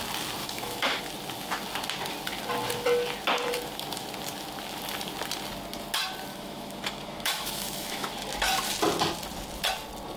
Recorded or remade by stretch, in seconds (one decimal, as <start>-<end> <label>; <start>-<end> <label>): 0.0-0.4 recorded; 0.4-1.0 remade; 1.0-6.3 recorded; 6.3-8.1 remade; 8.1-10.2 recorded